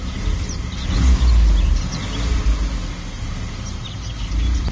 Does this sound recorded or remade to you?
recorded